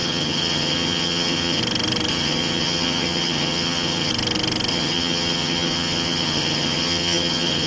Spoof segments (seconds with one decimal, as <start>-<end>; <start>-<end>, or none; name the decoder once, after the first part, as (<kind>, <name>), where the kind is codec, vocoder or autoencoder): 0.0-1.6 (vocoder, HiFi-GAN); 2.1-4.1; 4.7-7.7